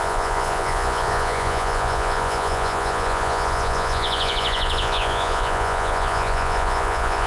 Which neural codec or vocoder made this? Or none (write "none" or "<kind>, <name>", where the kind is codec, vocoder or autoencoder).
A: vocoder, Vocos